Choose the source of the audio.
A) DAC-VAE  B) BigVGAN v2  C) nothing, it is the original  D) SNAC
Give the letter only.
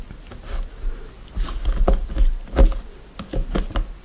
C